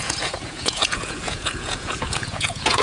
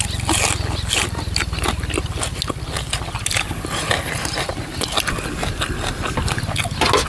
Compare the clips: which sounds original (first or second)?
second